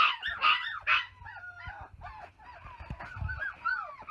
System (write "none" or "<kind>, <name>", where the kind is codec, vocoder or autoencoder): none